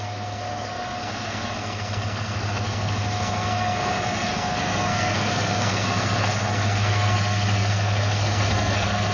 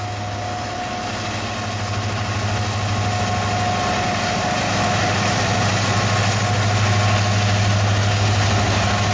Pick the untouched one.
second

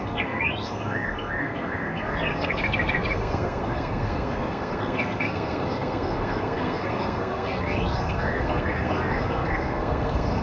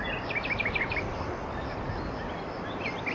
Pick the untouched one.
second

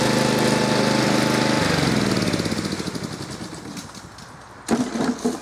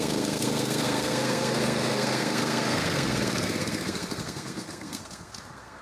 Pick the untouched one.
first